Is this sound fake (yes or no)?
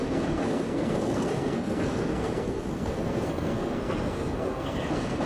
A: yes